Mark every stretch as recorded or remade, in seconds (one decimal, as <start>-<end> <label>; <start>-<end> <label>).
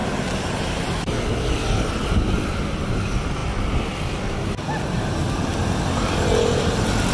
0.0-0.6 remade; 0.6-7.1 recorded